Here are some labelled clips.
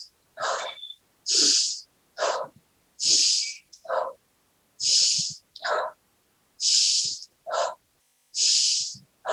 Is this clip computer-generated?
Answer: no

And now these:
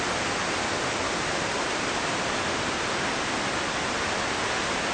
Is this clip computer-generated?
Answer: no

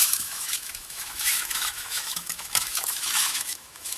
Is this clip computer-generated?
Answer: yes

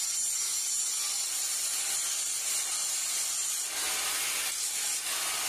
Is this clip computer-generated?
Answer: no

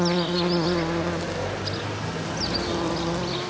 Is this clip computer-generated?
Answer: no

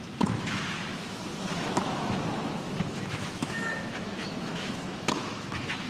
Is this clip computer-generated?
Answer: yes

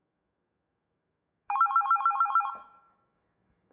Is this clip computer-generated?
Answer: yes